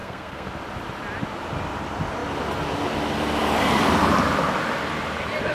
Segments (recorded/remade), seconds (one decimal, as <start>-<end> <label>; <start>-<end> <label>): 0.0-0.5 remade; 0.5-5.5 recorded